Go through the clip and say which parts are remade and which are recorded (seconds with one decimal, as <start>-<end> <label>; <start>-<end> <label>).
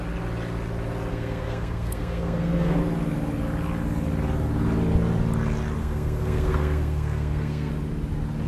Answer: 0.0-1.1 recorded; 1.1-2.8 remade; 2.8-5.8 recorded; 5.8-7.7 remade; 7.7-8.5 recorded